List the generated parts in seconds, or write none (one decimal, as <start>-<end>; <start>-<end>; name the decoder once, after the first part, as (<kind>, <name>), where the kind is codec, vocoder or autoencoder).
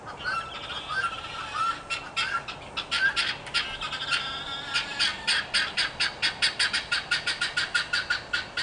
none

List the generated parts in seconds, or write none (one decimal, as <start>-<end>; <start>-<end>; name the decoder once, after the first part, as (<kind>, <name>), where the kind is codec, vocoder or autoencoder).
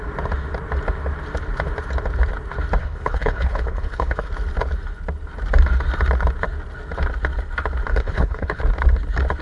2.8-4.3 (codec, HILCodec); 7.9-8.6